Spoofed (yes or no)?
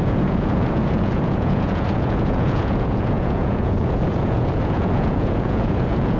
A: yes